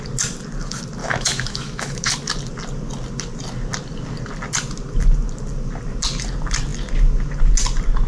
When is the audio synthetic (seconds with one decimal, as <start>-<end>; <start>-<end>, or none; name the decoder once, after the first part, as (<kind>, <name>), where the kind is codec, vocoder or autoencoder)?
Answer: 1.0-2.1 (autoencoder, DAC-VAE)